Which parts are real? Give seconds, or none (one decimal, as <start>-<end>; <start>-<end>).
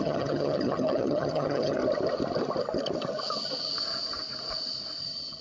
1.8-5.0